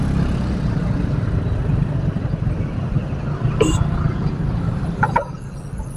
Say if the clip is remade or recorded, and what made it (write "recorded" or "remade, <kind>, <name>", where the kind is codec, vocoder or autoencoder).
recorded